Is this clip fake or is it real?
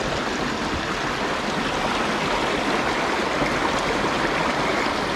real